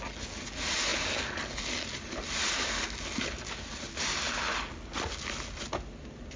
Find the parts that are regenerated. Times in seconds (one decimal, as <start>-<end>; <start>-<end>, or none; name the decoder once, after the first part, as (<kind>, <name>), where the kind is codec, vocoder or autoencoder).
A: none

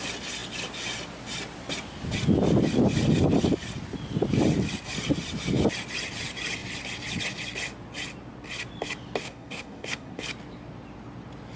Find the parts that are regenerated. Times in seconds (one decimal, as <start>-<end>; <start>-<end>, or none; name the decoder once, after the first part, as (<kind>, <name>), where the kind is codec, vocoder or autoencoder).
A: 9.2-10.2 (codec, SNAC)

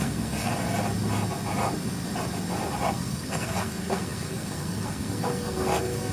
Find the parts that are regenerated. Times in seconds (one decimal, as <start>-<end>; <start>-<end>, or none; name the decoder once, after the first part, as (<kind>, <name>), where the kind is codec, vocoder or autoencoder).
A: 0.0-0.5 (codec, SNAC); 2.9-6.1

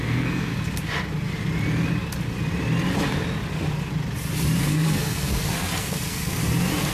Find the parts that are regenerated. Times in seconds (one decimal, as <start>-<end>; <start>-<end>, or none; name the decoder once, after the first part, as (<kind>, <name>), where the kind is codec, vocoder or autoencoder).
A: 0.0-0.5 (codec, SNAC); 4.6-6.4

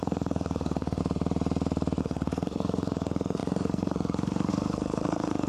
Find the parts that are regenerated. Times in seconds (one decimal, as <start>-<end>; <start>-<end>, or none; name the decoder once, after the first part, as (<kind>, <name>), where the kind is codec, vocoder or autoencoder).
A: 0.0-1.0 (codec, SNAC); 2.0-5.5

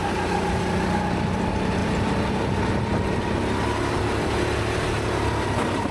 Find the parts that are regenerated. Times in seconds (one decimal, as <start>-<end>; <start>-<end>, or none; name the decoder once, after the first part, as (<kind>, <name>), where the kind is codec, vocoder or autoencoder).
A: none